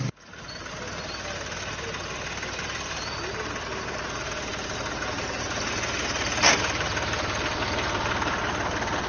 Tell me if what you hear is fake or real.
real